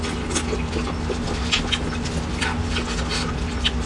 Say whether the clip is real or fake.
real